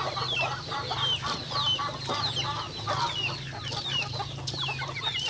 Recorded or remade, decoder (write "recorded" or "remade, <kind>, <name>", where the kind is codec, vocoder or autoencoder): recorded